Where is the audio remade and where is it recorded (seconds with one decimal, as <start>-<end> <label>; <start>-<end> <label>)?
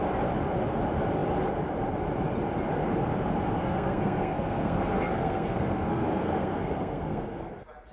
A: 0.0-3.6 recorded; 3.6-7.5 remade; 7.5-7.9 recorded